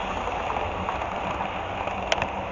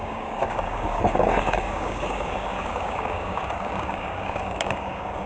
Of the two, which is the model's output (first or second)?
second